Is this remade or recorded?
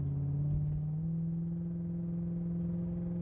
recorded